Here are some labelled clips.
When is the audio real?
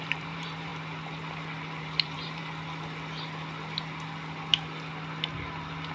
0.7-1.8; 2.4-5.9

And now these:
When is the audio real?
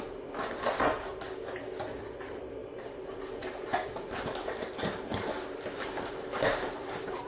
1.1-2.0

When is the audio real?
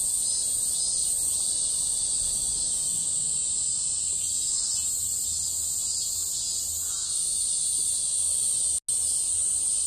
0.0-1.0; 1.6-9.9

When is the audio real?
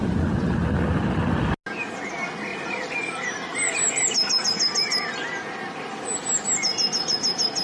0.0-2.5; 5.2-7.6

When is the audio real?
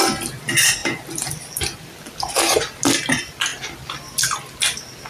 0.0-5.1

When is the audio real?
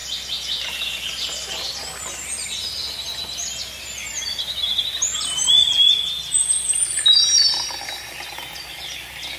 0.0-9.4